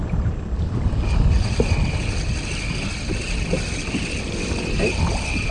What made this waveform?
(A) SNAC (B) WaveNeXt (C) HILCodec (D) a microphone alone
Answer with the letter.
D